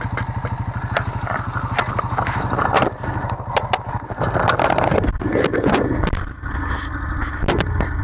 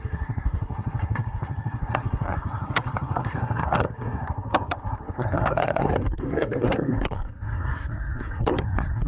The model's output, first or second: second